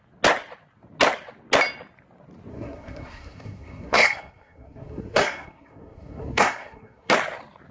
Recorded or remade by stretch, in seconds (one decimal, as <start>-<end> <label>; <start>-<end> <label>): 0.0-2.5 recorded; 2.5-7.1 remade; 7.1-7.7 recorded